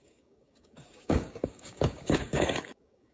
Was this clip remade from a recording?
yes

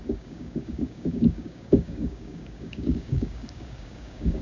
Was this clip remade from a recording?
yes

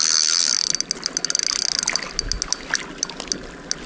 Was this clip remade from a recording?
no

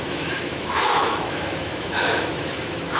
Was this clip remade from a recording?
yes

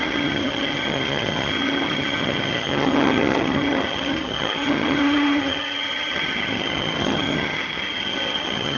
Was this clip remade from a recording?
yes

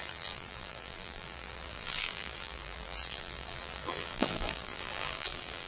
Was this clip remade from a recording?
yes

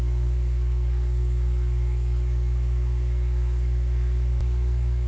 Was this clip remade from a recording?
yes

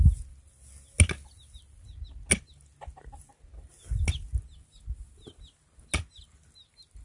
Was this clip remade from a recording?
no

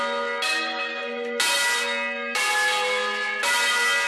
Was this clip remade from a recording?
no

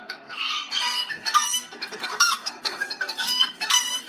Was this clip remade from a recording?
yes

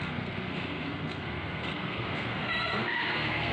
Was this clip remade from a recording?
yes